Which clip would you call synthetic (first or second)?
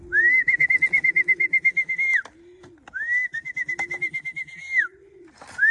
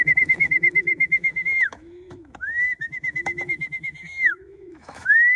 second